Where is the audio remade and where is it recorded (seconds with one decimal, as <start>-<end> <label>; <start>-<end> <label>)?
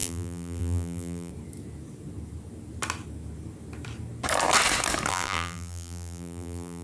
0.0-1.3 remade; 1.3-5.1 recorded; 5.1-6.8 remade